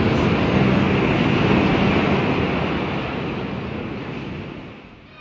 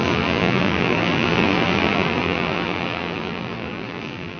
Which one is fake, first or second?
second